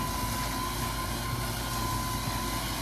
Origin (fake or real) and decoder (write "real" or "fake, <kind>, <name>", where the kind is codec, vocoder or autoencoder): real